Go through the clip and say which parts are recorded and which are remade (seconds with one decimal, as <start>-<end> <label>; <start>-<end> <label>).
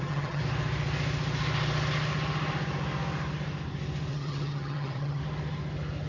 0.0-0.4 remade; 0.4-4.1 recorded; 4.1-5.2 remade; 5.2-6.1 recorded